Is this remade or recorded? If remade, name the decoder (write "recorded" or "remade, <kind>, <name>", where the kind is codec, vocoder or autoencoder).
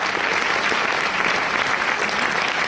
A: recorded